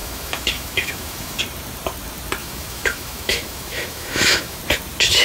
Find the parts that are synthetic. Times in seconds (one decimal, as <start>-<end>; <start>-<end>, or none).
0.0-1.4; 2.4-4.6